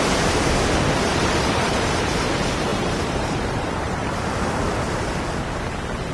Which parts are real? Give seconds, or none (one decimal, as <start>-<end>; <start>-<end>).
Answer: 0.0-1.1; 2.0-2.7; 4.1-6.1